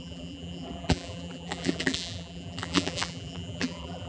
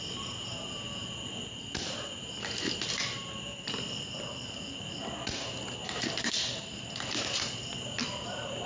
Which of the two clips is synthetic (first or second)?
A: first